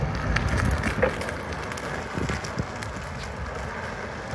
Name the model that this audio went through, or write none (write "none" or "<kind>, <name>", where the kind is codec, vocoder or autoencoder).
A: none